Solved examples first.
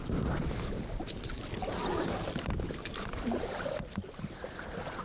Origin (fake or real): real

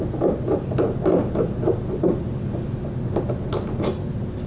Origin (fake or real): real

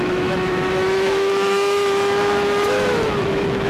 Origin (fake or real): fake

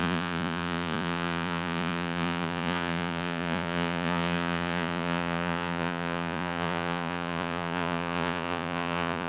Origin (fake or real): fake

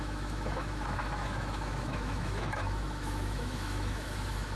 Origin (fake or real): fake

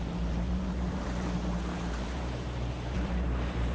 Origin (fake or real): fake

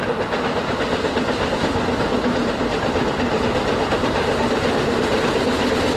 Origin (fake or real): real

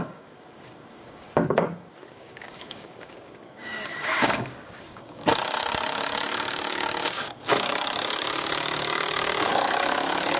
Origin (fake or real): fake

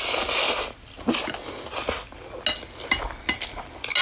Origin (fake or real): real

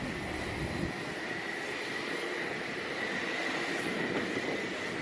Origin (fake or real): real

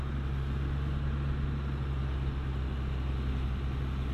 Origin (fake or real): real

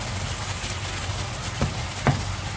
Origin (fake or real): real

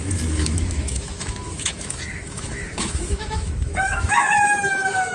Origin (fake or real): fake